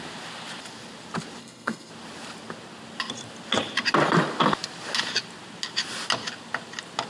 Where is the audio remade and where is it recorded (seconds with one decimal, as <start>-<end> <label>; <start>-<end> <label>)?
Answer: 0.0-1.4 recorded; 1.4-1.9 remade; 1.9-7.1 recorded